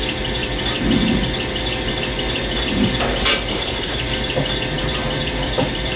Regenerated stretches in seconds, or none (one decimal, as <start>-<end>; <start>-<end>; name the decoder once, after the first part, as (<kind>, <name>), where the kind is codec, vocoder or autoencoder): 3.5-4.0 (codec, HILCodec)